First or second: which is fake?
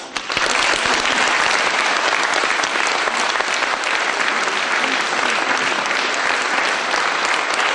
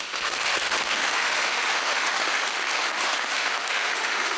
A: second